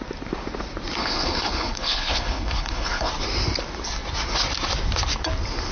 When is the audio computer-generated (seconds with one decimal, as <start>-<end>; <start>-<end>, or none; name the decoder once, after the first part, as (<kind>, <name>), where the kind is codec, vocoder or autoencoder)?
1.0-3.1 (codec, HILCodec)